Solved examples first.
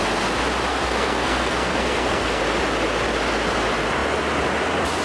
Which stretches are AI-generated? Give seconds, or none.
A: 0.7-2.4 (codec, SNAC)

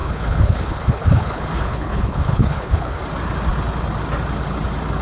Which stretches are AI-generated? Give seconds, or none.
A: 0.0-3.0 (codec, HILCodec)

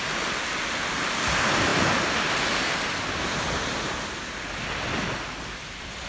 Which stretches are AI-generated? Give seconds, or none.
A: none

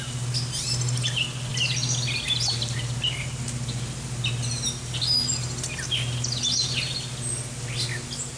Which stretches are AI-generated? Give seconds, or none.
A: none

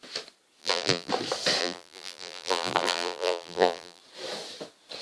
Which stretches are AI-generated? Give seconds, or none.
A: 0.6-1.1 (vocoder, BigVGAN v2); 1.6-4.0

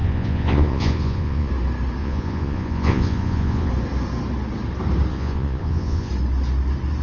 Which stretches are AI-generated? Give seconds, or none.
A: 0.0-1.5 (vocoder, Vocos); 2.0-3.7; 5.1-6.1